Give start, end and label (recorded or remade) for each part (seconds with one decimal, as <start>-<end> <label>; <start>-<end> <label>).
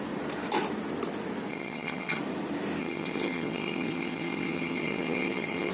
0.0-1.5 recorded; 1.5-2.2 remade; 2.2-2.8 recorded; 2.8-5.7 remade